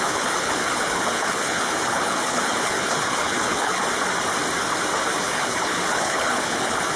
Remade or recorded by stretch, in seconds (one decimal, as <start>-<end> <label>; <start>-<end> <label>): 0.0-3.8 remade; 3.8-5.2 recorded; 5.2-7.0 remade